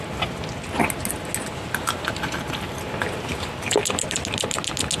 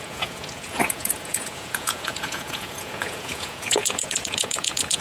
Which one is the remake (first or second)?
second